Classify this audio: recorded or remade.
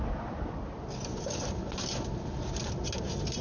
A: recorded